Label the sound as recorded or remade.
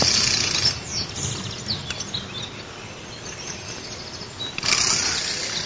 recorded